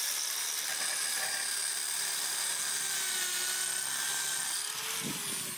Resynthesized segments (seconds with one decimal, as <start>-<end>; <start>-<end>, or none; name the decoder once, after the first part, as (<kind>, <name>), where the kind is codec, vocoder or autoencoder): 1.7-2.6 (vocoder, BigVGAN v2)